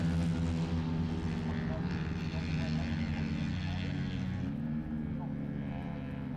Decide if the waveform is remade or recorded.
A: recorded